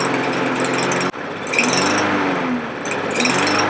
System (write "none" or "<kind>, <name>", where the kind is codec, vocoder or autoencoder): none